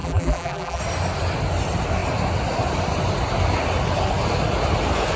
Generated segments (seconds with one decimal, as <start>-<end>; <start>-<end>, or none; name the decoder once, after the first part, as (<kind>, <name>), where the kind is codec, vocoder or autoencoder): 0.0-0.8 (vocoder, BigVGAN v2)